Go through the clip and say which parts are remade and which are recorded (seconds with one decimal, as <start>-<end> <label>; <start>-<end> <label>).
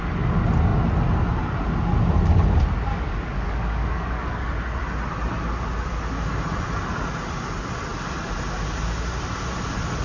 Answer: 0.0-2.9 recorded; 2.9-4.5 remade; 4.5-10.0 recorded